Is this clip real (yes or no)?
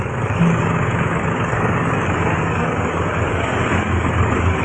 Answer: no